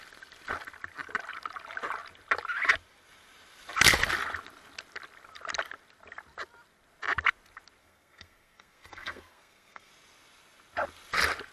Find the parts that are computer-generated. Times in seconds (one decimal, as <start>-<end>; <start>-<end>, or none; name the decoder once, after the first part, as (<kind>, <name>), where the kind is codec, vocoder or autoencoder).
7.8-9.9 (codec, SNAC)